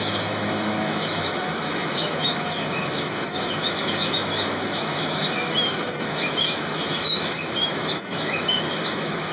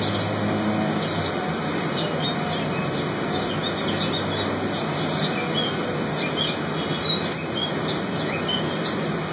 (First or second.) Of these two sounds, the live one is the second